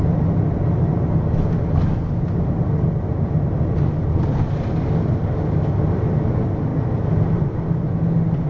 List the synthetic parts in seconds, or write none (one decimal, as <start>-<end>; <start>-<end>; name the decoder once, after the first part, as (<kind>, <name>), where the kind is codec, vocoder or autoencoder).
none